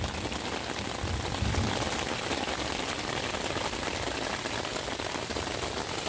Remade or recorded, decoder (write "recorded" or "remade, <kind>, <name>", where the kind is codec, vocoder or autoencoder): recorded